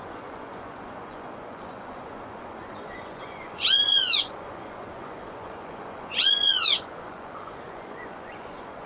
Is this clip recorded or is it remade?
remade